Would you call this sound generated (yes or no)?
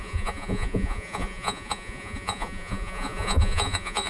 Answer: yes